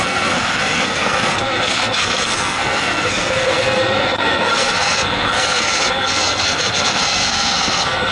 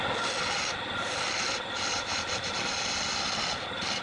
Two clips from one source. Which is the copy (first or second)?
first